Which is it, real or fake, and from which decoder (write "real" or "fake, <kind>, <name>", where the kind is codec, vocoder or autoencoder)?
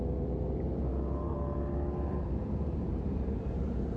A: real